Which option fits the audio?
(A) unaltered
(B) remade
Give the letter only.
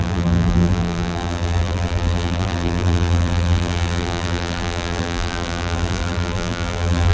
B